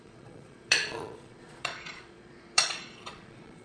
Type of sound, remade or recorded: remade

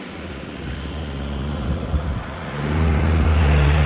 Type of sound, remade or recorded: remade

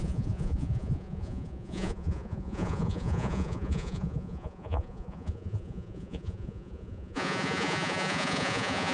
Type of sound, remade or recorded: remade